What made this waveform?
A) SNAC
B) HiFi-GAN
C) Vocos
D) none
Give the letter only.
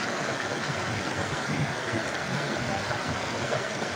A